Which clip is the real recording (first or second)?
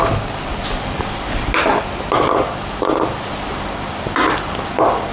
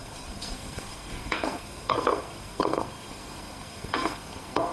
first